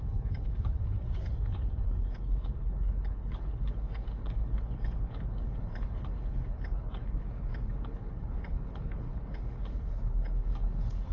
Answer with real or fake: fake